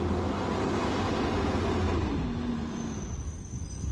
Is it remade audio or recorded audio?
recorded